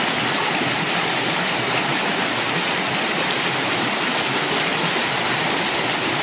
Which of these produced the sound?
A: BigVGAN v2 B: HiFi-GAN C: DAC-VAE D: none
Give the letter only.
D